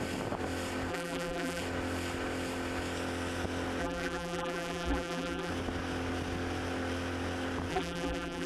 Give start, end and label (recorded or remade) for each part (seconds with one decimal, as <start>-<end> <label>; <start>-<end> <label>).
0.0-0.9 recorded; 0.9-1.6 remade; 1.6-3.8 recorded; 3.8-5.5 remade; 5.5-7.7 recorded; 7.7-8.5 remade